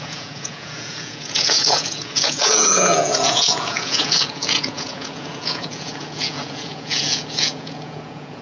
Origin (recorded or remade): remade